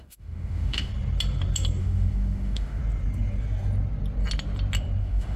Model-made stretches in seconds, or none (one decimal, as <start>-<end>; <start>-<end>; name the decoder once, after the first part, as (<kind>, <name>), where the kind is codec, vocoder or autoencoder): 0.0-0.9 (autoencoder, DAC-VAE); 1.8-2.8; 5.0-5.4